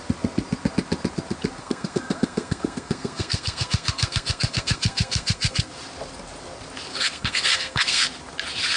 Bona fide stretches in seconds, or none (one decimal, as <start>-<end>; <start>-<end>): 0.0-1.6; 5.7-6.9; 8.0-8.8